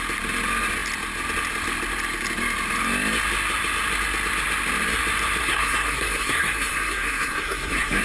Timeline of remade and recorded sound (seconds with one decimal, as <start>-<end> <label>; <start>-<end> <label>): 0.0-5.4 recorded; 5.4-8.0 remade